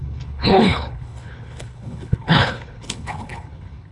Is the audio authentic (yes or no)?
no